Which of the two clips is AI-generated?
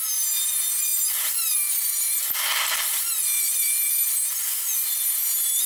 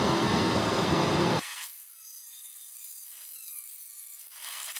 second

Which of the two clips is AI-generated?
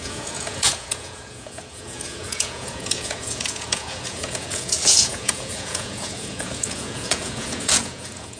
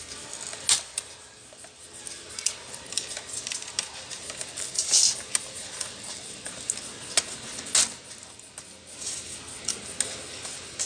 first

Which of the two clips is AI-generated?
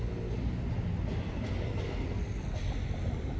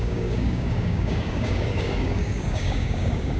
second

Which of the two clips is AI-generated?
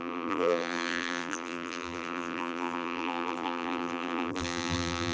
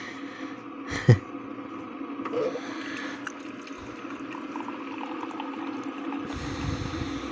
first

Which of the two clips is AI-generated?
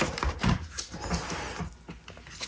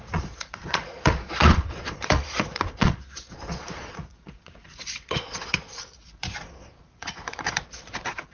second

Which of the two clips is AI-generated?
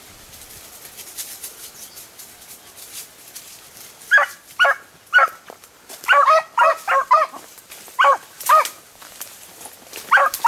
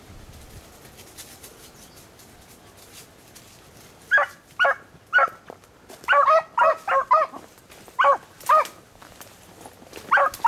first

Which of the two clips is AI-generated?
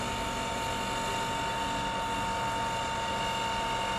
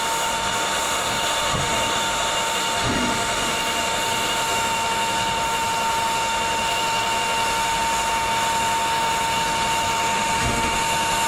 second